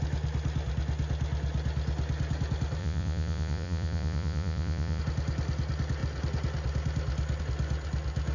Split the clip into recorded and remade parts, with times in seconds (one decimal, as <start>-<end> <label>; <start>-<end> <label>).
0.0-2.8 recorded; 2.8-5.0 remade; 5.0-8.3 recorded